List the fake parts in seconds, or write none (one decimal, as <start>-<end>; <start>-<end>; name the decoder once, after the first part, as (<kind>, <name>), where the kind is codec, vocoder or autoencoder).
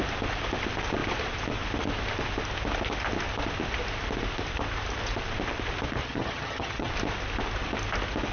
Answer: 6.0-6.9 (vocoder, HiFi-GAN)